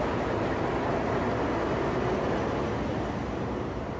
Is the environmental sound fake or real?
real